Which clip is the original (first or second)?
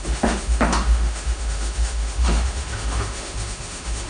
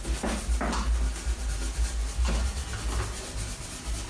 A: second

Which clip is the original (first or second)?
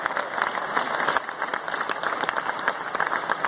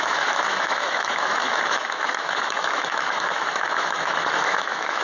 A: first